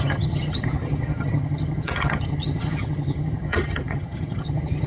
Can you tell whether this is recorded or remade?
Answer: remade